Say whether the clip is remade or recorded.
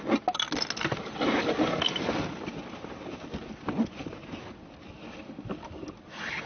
recorded